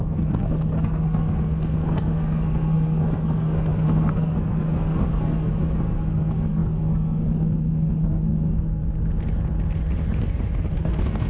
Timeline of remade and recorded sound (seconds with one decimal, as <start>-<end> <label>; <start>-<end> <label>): 0.0-8.8 remade; 8.8-10.7 recorded; 10.7-11.3 remade